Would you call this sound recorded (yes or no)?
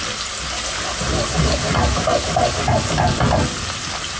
yes